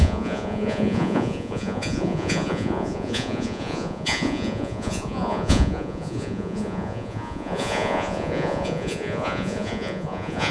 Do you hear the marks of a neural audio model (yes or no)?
yes